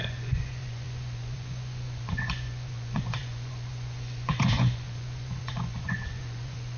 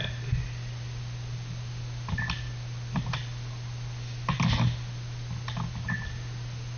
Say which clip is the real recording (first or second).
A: second